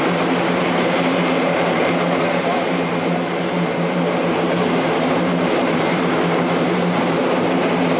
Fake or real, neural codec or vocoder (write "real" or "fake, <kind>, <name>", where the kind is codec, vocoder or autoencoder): fake, vocoder, BigVGAN v2